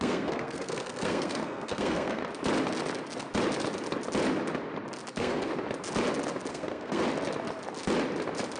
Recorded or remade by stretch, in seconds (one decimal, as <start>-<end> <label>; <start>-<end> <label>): 0.0-2.2 remade; 2.2-5.1 recorded; 5.1-5.5 remade; 5.5-6.5 recorded; 6.5-7.0 remade; 7.0-8.6 recorded